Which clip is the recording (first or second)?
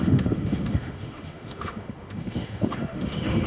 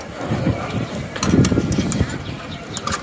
second